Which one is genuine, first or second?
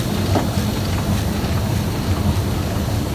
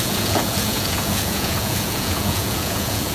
first